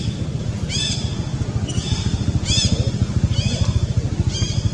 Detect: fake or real real